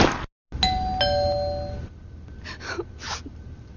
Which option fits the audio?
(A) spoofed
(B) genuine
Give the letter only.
B